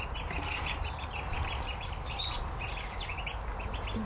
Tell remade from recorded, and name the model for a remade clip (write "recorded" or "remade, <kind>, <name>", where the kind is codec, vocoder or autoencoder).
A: recorded